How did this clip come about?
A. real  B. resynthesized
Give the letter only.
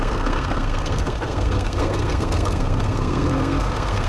B